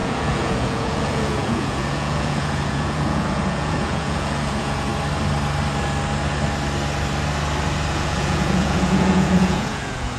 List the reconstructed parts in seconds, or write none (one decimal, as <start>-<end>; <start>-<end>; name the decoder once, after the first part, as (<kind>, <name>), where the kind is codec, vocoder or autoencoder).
0.0-4.9 (vocoder, Vocos); 7.9-10.2